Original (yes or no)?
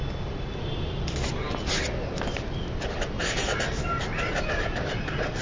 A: yes